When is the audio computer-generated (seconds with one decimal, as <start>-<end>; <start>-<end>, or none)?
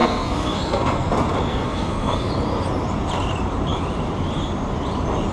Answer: 0.0-1.1; 1.5-2.3